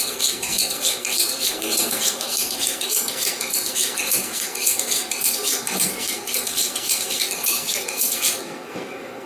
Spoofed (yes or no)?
yes